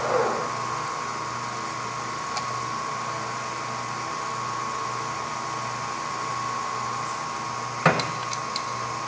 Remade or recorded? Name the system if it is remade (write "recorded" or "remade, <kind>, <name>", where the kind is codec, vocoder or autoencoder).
recorded